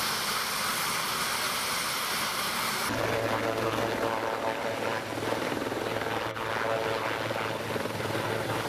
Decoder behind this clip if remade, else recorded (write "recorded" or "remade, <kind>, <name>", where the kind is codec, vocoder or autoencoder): recorded